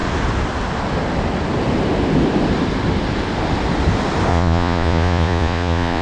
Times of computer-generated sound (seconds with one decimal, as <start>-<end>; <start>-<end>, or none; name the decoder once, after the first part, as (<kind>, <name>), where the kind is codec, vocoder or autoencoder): 4.3-6.0 (vocoder, Vocos)